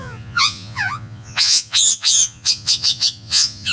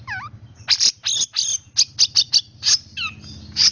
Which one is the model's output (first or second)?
first